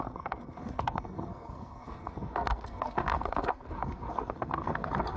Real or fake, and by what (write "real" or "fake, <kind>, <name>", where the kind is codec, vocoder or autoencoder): fake, codec, SNAC